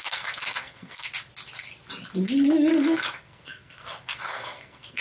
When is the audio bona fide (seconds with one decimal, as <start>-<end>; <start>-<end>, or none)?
1.1-2.7